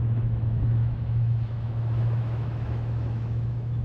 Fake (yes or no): yes